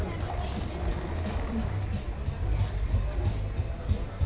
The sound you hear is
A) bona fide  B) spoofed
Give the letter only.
A